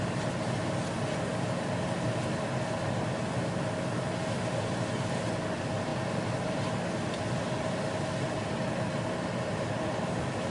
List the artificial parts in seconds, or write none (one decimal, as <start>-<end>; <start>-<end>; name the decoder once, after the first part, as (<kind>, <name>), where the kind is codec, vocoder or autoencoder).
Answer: none